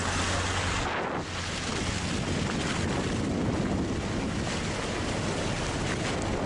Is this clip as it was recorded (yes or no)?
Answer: yes